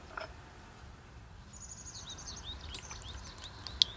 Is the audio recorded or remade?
recorded